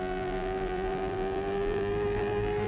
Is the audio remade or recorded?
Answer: remade